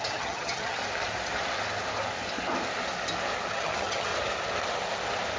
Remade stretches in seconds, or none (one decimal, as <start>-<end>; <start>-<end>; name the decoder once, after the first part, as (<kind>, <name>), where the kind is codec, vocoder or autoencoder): 0.0-0.8 (vocoder, HiFi-GAN); 3.5-4.1